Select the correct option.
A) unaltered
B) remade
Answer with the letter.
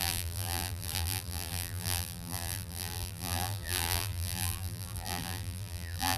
B